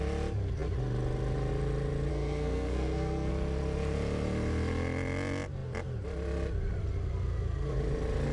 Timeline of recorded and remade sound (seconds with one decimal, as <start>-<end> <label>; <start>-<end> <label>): 0.0-2.1 recorded; 2.1-3.3 remade; 3.3-8.3 recorded